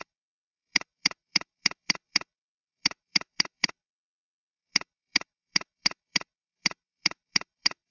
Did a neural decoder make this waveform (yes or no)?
yes